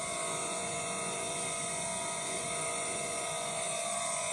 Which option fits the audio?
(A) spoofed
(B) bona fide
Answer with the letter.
A